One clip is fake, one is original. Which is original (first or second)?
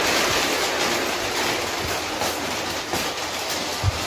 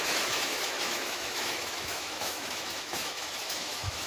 first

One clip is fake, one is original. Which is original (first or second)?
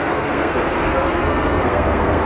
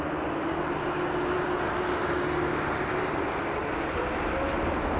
second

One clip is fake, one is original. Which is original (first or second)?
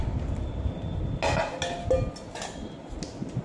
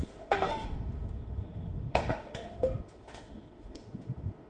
first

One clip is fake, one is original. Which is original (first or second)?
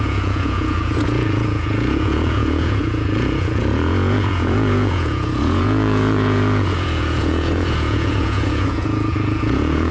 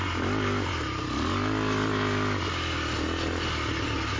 second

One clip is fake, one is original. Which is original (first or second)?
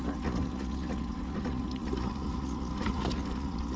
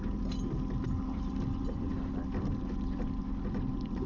second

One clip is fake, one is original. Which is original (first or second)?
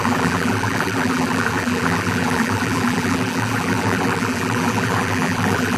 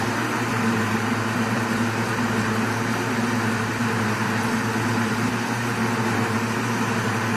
second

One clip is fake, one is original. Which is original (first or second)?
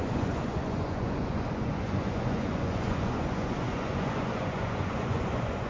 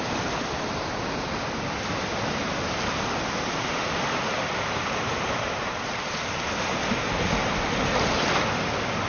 second